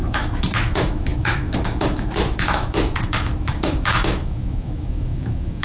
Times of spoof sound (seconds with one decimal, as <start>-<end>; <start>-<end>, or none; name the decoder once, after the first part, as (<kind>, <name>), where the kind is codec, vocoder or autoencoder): 0.0-5.6 (autoencoder, DAC-VAE)